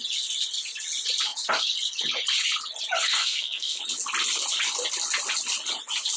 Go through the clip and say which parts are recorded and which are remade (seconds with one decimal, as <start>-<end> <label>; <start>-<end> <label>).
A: 0.0-3.2 recorded; 3.2-3.8 remade; 3.8-6.2 recorded